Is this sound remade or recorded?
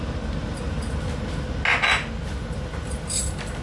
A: recorded